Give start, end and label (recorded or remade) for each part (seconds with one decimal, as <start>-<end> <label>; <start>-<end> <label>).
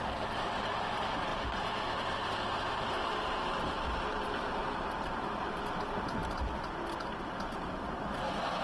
0.0-4.6 recorded; 4.6-5.6 remade; 5.6-6.2 recorded; 6.2-6.8 remade; 6.8-8.6 recorded